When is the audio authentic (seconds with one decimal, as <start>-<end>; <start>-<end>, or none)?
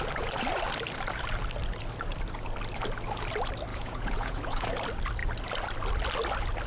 0.0-3.7; 4.7-6.7